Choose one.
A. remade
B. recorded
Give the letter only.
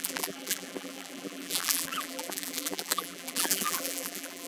A